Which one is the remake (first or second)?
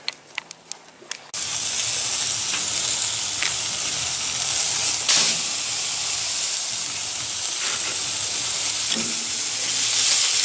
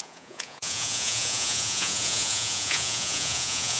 second